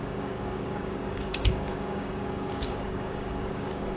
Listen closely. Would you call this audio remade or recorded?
remade